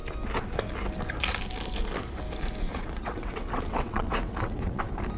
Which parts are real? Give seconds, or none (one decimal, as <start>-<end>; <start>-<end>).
0.0-2.7; 4.8-5.2